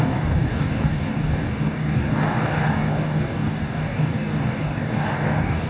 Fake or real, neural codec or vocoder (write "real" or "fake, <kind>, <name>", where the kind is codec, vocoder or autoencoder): fake, codec, DAC